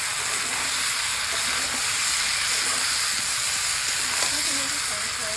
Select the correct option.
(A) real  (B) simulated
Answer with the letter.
A